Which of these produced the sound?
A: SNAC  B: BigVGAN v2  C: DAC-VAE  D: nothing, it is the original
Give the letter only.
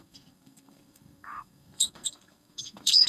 A